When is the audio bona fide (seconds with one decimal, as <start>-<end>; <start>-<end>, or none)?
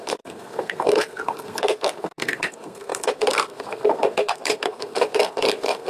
none